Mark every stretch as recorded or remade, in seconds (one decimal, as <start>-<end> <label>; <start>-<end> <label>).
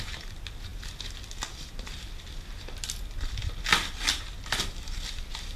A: 0.0-5.6 recorded